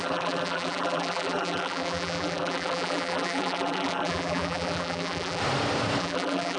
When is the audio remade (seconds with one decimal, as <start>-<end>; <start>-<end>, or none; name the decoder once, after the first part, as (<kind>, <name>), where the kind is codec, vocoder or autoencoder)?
0.0-5.4 (vocoder, BigVGAN v2); 6.0-6.6

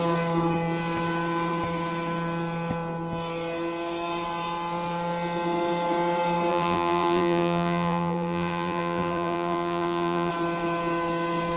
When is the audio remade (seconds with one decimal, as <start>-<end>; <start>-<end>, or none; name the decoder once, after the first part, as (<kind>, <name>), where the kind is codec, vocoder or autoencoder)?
6.5-10.3 (vocoder, BigVGAN v2)

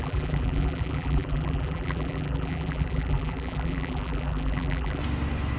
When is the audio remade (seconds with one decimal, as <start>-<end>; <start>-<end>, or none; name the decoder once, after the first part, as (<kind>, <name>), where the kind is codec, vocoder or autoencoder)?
0.0-5.0 (vocoder, BigVGAN v2)

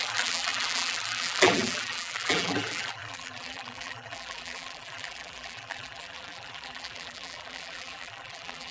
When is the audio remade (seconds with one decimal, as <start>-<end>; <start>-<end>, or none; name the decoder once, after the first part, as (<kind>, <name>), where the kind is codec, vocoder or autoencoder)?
0.0-8.7 (vocoder, BigVGAN v2)

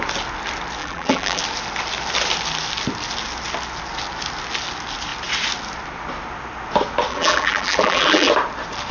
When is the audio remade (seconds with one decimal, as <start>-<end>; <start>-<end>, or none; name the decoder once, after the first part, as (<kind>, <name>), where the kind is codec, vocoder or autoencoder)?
0.8-1.4 (vocoder, BigVGAN v2); 7.1-8.3

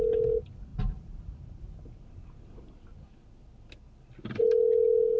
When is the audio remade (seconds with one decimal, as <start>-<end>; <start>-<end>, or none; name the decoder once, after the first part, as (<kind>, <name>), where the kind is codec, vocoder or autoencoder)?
0.7-1.6 (vocoder, BigVGAN v2)